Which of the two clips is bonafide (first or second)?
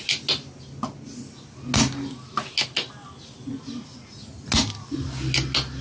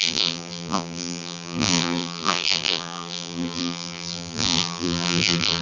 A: first